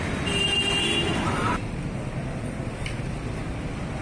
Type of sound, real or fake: real